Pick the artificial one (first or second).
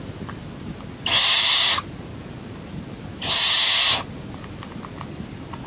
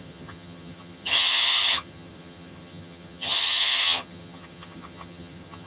second